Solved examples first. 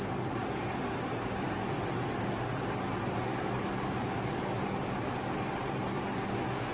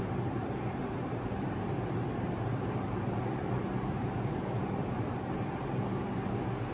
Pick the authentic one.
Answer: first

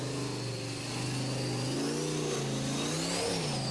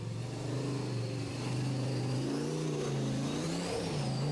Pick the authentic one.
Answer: first